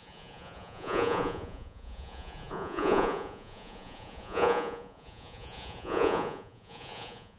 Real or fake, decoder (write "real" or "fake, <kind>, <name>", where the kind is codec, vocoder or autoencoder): fake, vocoder, Vocos